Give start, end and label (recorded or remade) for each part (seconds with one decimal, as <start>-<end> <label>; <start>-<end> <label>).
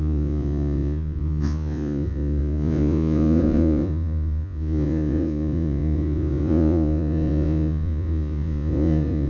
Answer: 0.0-9.3 remade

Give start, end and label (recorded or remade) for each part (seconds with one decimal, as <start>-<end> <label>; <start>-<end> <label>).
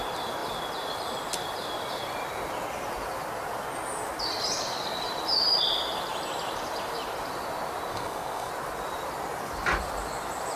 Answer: 0.0-7.9 recorded; 7.9-8.5 remade; 8.5-10.6 recorded